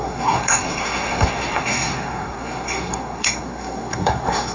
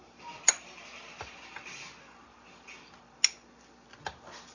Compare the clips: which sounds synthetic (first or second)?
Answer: first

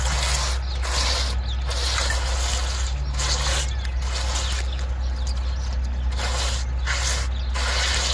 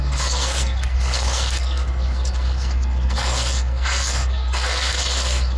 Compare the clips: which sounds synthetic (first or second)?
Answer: second